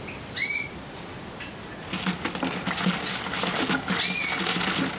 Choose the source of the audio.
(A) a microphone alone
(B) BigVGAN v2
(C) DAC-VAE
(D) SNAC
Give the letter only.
A